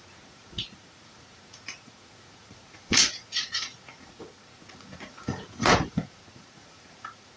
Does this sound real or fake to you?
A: fake